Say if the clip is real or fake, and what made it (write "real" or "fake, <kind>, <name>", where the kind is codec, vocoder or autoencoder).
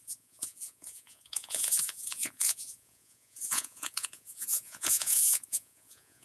fake, vocoder, Vocos